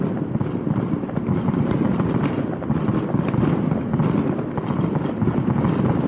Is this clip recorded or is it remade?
remade